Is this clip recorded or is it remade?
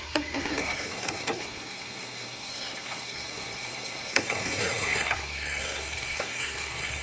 remade